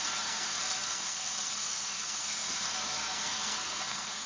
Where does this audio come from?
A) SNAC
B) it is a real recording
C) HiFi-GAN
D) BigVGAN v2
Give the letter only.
A